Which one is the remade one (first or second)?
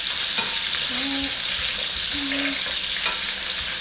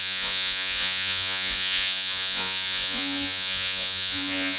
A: second